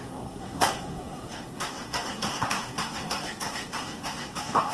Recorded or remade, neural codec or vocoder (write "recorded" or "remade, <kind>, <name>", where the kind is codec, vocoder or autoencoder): remade, codec, SNAC